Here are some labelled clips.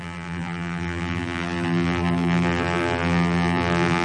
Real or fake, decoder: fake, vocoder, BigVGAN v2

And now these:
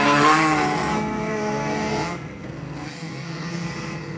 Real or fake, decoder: fake, codec, SNAC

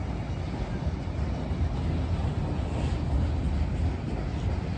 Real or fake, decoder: real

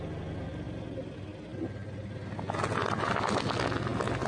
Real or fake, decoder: real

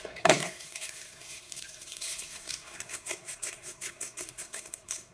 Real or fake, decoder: fake, codec, SNAC